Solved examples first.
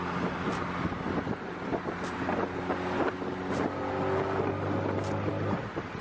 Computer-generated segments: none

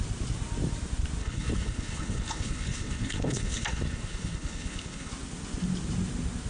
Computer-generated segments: 1.2-5.1 (codec, HILCodec)

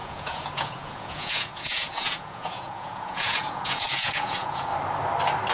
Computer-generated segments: 0.0-4.7 (vocoder, Vocos)

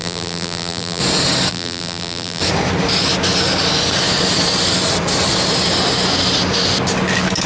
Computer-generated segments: 0.0-1.0 (vocoder, BigVGAN v2); 1.5-2.4

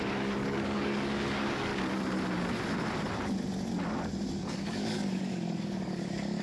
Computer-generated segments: 0.0-1.7 (codec, DAC); 4.4-6.4

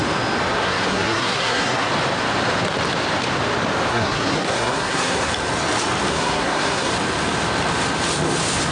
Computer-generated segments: 0.5-1.9 (codec, SNAC); 3.9-5.3; 6.1-6.9

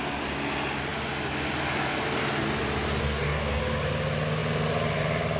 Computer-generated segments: 3.0-3.6 (codec, DAC)